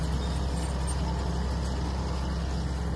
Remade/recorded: recorded